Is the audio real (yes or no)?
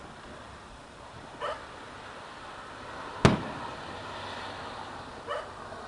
yes